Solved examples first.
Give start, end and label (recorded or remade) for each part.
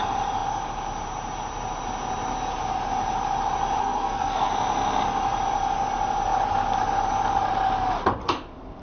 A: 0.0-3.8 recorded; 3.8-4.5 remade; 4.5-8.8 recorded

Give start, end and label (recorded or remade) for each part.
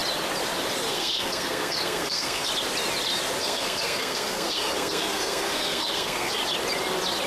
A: 0.0-0.9 recorded; 0.9-2.5 remade; 2.5-3.4 recorded; 3.4-6.4 remade; 6.4-7.3 recorded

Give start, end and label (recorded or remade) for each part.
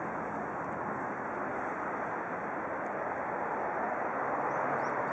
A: 0.0-1.5 recorded; 1.5-2.4 remade; 2.4-5.1 recorded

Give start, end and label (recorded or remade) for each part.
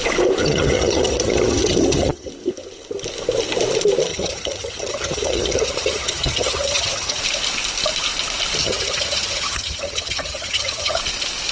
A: 0.0-0.4 recorded; 0.4-2.3 remade; 2.3-4.1 recorded; 4.1-7.2 remade; 7.2-8.6 recorded; 8.6-11.0 remade; 11.0-11.5 recorded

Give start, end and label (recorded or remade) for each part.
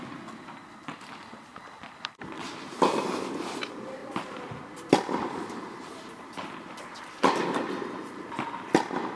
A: 0.0-1.5 recorded; 1.5-2.8 remade; 2.8-4.0 recorded; 4.0-8.7 remade; 8.7-9.2 recorded